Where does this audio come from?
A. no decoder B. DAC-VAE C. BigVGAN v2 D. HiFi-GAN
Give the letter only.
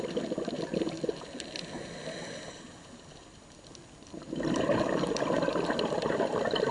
A